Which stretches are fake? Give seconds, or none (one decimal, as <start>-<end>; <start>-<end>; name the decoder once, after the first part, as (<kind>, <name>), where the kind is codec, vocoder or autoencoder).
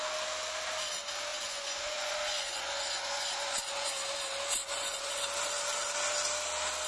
1.3-3.9 (vocoder, Vocos); 4.6-5.2